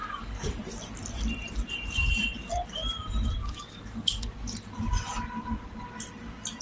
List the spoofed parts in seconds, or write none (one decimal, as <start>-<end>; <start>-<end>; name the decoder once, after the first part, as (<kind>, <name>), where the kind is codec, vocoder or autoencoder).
0.0-0.6 (codec, DAC); 3.4-4.3